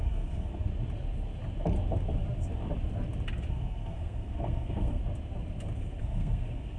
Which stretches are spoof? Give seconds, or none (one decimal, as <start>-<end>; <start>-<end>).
0.0-0.7; 3.5-5.0; 6.0-6.8